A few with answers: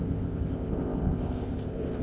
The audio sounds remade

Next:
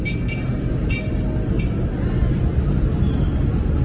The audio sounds recorded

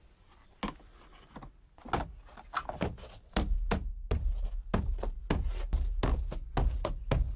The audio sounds recorded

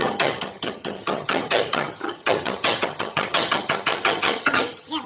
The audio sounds remade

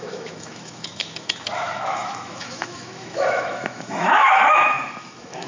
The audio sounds remade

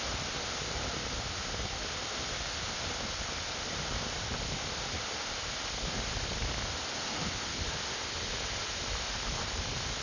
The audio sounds recorded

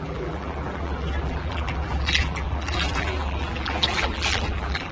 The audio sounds remade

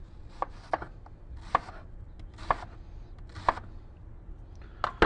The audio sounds recorded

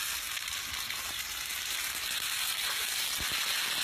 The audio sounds recorded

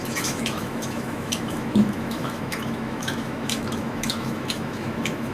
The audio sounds remade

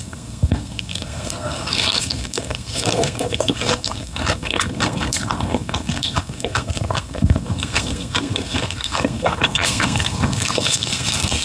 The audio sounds remade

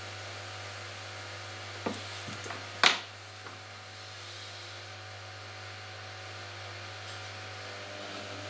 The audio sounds recorded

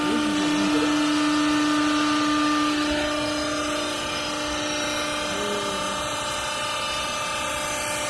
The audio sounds recorded